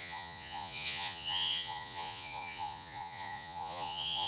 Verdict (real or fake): fake